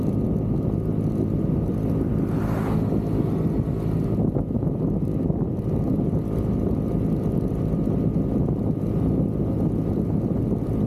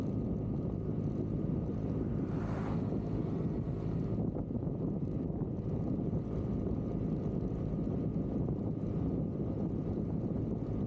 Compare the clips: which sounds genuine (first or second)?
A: first